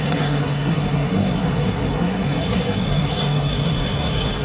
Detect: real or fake fake